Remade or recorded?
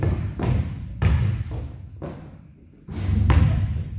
recorded